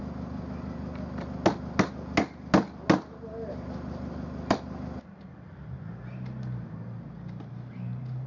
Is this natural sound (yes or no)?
yes